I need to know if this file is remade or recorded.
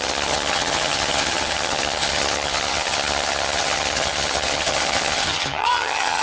remade